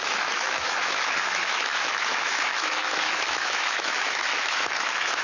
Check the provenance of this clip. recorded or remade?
remade